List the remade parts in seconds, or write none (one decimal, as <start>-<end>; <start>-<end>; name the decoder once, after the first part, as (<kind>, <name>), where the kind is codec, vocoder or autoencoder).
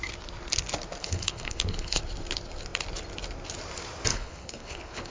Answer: 1.0-2.0 (codec, HILCodec); 4.1-5.1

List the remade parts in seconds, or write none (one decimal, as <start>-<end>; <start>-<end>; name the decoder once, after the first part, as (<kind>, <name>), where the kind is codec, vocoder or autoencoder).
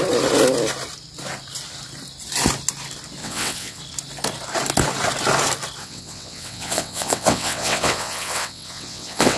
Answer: 3.2-3.8 (vocoder, WaveNeXt); 5.8-9.4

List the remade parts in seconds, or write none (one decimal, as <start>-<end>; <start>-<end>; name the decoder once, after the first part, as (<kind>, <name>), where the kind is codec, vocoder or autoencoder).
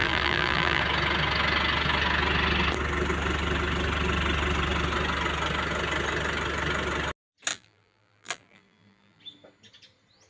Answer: 0.0-0.8 (vocoder, BigVGAN v2); 7.5-9.2